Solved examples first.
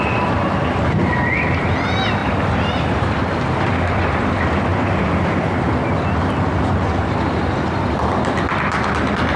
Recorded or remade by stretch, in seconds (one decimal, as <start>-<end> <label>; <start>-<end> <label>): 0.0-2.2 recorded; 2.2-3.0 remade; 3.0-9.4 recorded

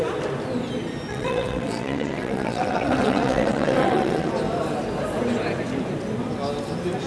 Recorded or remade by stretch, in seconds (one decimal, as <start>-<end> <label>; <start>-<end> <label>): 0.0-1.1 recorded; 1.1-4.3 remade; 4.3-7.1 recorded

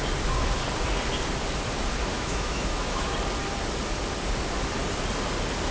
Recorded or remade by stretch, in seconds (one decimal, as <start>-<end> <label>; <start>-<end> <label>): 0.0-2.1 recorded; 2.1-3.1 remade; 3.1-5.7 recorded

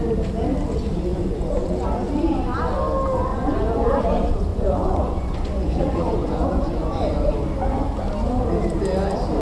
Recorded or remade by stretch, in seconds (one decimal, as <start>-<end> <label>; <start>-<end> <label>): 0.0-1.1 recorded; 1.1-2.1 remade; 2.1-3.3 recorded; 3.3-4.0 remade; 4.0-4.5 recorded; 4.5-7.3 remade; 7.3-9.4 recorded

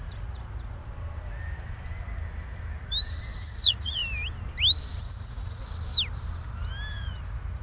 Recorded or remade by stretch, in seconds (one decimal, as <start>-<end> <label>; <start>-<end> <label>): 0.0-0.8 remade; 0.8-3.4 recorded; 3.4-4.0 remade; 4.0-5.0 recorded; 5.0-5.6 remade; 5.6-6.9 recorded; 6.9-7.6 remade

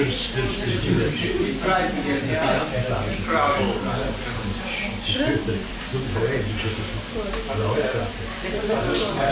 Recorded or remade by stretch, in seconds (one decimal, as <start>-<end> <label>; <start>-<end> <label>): 0.0-9.3 recorded